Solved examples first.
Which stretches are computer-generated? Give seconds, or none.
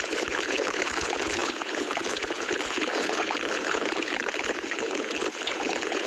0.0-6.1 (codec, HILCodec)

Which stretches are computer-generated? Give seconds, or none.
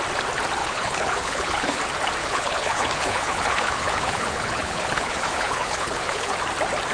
0.6-1.8 (codec, HILCodec); 2.2-6.3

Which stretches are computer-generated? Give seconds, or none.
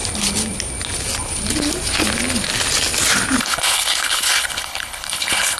3.4-5.6 (codec, HILCodec)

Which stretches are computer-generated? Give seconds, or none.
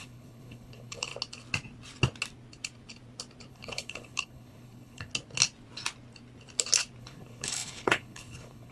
0.0-1.1 (codec, HILCodec); 3.5-5.1; 7.0-8.7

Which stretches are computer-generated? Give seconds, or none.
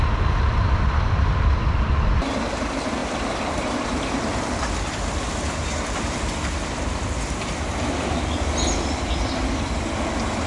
none